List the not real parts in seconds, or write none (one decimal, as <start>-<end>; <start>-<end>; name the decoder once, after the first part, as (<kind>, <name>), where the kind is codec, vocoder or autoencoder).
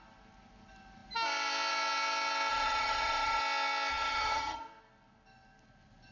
2.5-3.4 (vocoder, HiFi-GAN); 3.9-4.6